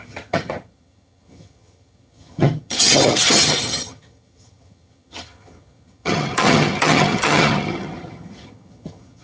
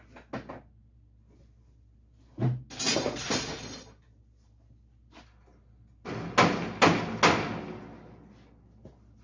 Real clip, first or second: second